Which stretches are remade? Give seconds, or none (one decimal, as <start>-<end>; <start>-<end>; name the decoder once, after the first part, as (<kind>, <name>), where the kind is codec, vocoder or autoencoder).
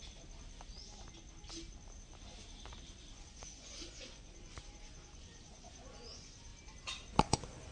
3.1-6.5 (vocoder, Vocos); 7.2-7.7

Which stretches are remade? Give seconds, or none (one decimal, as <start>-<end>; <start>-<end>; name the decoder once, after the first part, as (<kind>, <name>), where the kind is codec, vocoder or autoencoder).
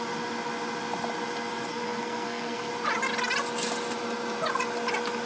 1.7-2.7 (codec, SNAC)